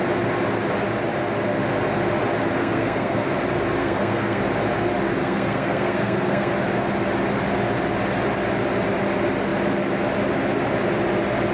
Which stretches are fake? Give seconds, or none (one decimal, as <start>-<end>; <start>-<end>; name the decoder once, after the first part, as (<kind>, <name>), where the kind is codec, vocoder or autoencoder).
2.6-3.3 (codec, SNAC); 3.8-4.4; 5.2-6.5